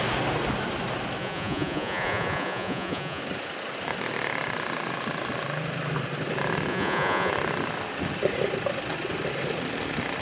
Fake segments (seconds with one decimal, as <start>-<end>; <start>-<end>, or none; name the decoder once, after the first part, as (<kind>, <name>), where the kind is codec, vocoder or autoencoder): 1.2-3.2 (vocoder, Vocos); 6.7-7.3

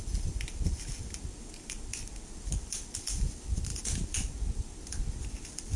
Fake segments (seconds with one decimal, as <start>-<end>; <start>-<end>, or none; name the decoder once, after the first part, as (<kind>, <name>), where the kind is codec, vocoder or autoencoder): none

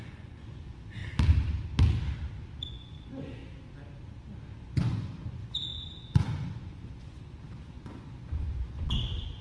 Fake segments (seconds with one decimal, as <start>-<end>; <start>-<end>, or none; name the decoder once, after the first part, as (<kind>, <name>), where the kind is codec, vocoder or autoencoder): 0.0-1.0 (vocoder, Vocos); 2.6-3.4; 4.6-9.4

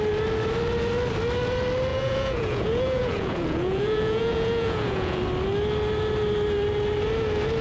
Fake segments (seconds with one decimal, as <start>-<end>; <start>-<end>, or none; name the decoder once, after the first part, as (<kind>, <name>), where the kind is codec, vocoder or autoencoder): 1.9-5.2 (vocoder, Vocos)

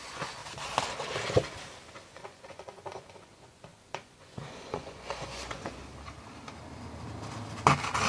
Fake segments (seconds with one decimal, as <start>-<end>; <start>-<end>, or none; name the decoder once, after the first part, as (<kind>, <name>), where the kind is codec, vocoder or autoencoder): 0.0-0.4 (vocoder, Vocos); 1.9-5.8